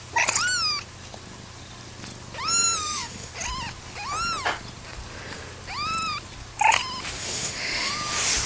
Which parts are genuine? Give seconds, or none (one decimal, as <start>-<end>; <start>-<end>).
0.0-2.8; 3.3-7.2; 7.9-8.5